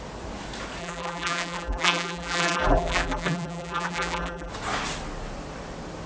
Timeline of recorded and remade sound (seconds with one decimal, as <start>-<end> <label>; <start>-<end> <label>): 0.0-0.8 recorded; 0.8-4.5 remade; 4.5-6.1 recorded